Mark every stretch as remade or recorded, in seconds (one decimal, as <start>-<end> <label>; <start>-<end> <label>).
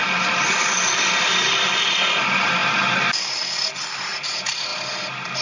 0.0-1.8 recorded; 1.8-2.6 remade; 2.6-3.4 recorded; 3.4-4.7 remade; 4.7-5.4 recorded